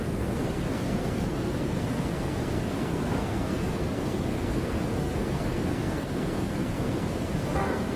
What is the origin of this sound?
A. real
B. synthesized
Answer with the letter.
B